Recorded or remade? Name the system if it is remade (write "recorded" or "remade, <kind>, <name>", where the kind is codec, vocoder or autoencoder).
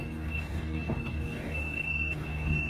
remade, codec, DAC